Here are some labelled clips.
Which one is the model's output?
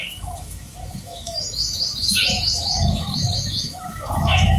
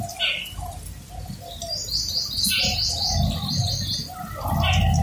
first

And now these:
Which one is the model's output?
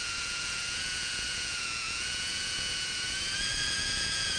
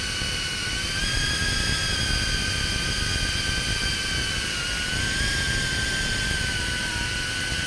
first